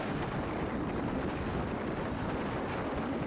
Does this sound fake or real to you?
real